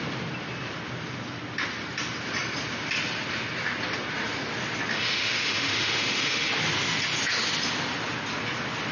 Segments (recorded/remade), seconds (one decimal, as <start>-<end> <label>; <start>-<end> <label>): 0.0-4.9 recorded; 4.9-6.5 remade; 6.5-8.9 recorded

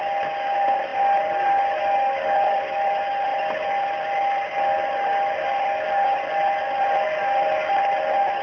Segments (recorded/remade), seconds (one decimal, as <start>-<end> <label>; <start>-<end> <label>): 0.0-8.4 recorded